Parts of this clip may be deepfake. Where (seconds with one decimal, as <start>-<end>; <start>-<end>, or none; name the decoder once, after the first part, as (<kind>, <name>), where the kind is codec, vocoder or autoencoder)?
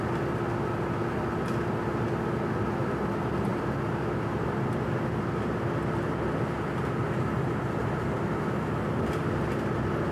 3.5-5.6 (vocoder, BigVGAN v2); 7.8-8.7